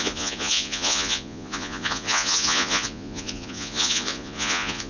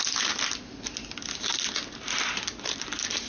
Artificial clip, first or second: first